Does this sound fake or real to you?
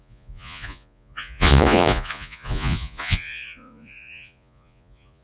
fake